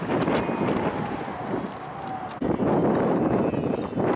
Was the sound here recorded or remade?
recorded